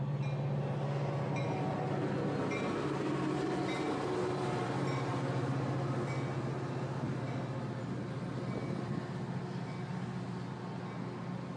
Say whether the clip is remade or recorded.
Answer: recorded